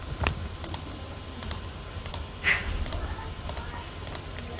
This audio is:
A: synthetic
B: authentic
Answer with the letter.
B